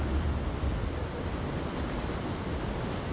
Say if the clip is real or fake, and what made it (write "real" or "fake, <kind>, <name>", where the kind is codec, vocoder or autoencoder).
real